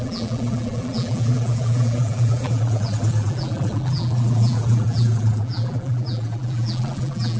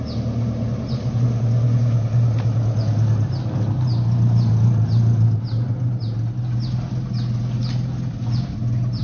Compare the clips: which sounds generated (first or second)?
first